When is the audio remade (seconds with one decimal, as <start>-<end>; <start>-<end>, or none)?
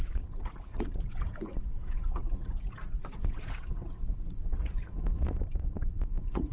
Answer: 0.0-6.5